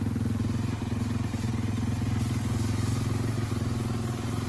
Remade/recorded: recorded